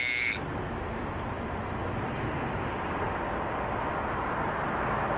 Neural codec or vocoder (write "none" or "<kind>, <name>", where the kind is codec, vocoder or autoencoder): none